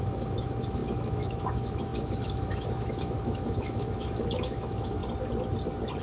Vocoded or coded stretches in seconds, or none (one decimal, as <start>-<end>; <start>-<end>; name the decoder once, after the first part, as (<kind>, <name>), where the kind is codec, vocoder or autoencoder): 0.0-5.0 (autoencoder, DAC-VAE)